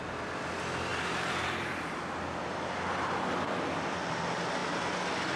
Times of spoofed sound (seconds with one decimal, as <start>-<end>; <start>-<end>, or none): 0.9-2.0